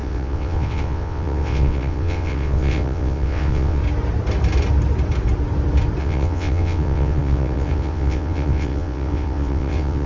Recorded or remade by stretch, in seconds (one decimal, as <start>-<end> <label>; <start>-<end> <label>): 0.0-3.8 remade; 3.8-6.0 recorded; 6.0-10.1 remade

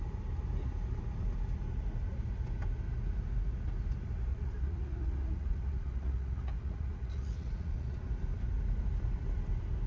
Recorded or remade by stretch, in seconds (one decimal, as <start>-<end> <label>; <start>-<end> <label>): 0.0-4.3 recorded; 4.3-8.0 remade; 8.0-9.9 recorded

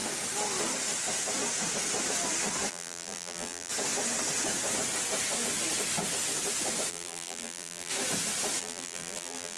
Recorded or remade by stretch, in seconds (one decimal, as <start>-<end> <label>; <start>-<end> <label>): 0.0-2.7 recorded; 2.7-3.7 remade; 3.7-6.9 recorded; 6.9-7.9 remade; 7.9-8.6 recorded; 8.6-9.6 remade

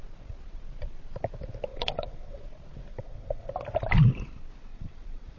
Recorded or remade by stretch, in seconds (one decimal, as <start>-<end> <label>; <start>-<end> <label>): 0.0-1.7 recorded; 1.7-2.4 remade; 2.4-2.9 recorded; 2.9-3.4 remade; 3.4-4.7 recorded; 4.7-5.4 remade

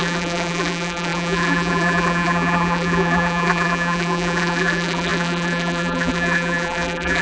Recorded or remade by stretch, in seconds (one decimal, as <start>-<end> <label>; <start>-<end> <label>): 0.0-7.2 remade

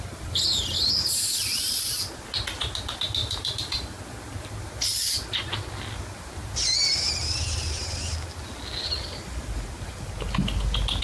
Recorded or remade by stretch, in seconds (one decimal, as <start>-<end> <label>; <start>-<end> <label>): 0.0-3.2 recorded; 3.2-4.0 remade; 4.0-11.0 recorded

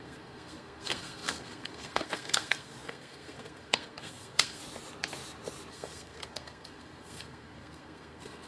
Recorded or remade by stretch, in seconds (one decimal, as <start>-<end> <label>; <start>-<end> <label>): 0.0-4.6 remade; 4.6-5.7 recorded; 5.7-8.5 remade

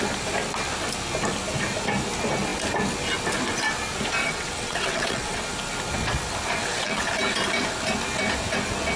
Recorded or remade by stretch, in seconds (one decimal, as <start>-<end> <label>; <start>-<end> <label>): 0.0-4.2 recorded; 4.2-5.4 remade; 5.4-6.6 recorded; 6.6-7.1 remade; 7.1-9.0 recorded